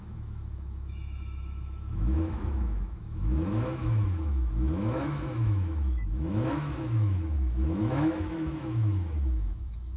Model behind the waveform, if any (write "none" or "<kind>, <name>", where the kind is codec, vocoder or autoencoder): autoencoder, DAC-VAE